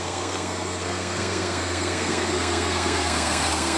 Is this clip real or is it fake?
fake